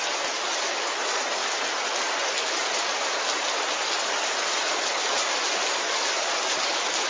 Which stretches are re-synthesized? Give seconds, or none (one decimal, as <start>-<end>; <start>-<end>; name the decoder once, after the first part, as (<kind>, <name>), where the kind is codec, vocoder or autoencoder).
none